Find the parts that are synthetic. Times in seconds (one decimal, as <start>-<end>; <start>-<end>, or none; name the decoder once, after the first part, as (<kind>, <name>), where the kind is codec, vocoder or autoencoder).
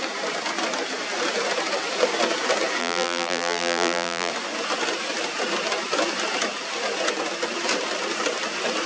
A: 2.8-4.3 (vocoder, BigVGAN v2)